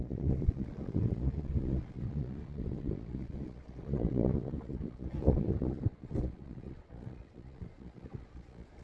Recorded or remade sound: remade